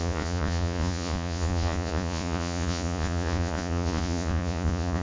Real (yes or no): no